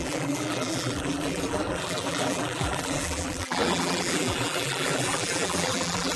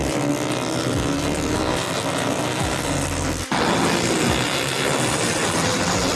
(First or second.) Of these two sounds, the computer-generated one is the first